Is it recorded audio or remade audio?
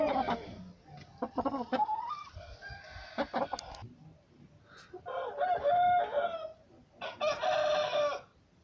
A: recorded